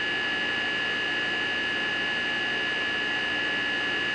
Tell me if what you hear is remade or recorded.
recorded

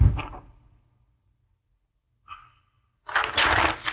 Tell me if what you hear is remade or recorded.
recorded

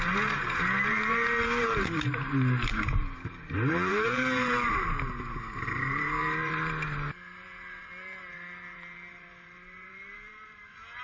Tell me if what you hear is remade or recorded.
remade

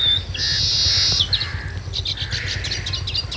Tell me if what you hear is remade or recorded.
recorded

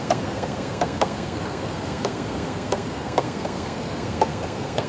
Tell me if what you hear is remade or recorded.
remade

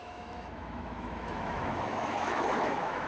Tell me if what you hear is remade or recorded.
remade